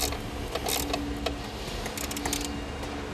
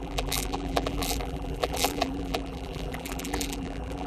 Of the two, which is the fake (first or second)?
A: second